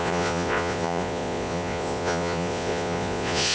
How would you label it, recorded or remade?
remade